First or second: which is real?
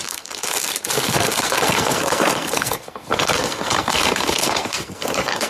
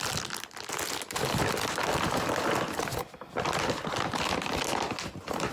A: second